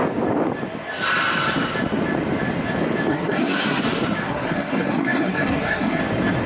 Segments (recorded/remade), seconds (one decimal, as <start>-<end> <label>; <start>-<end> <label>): 0.0-3.1 recorded; 3.1-3.8 remade; 3.8-4.2 recorded; 4.2-6.0 remade; 6.0-6.5 recorded